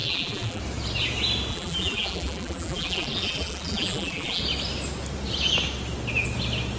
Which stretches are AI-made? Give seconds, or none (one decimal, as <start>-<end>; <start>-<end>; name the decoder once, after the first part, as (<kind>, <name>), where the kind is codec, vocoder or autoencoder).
0.0-0.6 (vocoder, BigVGAN v2); 1.5-4.4